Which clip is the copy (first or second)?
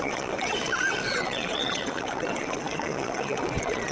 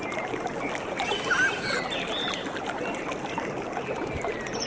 first